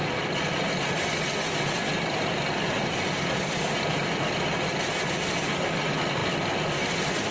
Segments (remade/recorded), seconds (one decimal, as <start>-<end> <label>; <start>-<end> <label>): 0.0-4.3 remade; 4.3-6.2 recorded; 6.2-6.7 remade; 6.7-7.3 recorded